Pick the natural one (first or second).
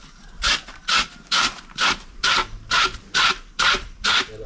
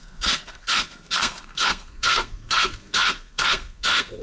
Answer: first